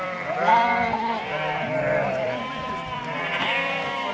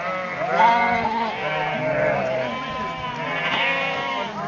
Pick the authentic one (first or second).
second